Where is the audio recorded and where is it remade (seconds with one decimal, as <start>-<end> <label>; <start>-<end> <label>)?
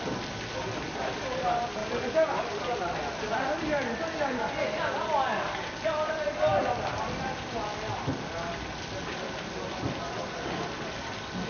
0.0-11.5 recorded